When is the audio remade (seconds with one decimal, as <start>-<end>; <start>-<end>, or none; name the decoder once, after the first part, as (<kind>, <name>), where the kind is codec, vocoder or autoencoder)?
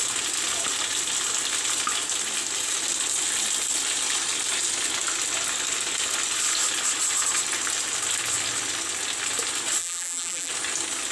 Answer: 9.8-10.5 (vocoder, BigVGAN v2)